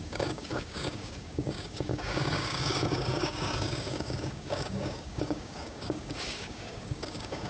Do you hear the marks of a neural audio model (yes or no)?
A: yes